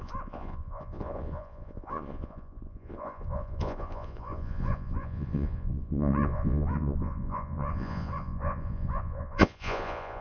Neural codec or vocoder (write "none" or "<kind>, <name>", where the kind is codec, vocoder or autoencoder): vocoder, Vocos